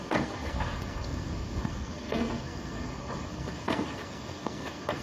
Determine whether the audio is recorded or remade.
remade